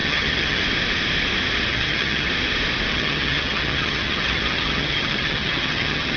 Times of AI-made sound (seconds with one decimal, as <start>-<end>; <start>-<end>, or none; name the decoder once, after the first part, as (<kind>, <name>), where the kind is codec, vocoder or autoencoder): 0.0-0.6 (vocoder, HiFi-GAN); 1.7-2.3; 2.9-6.2